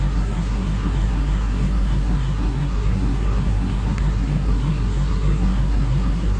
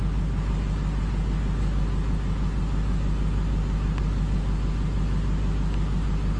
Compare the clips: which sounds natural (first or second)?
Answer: second